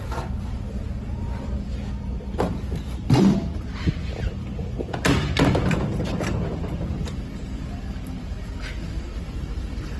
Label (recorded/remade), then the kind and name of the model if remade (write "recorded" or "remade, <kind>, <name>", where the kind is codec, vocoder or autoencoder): remade, vocoder, BigVGAN v2